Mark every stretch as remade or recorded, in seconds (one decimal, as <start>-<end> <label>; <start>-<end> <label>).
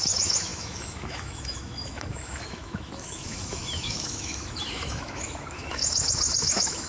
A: 0.0-6.9 remade